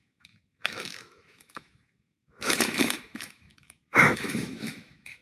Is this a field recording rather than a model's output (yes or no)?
no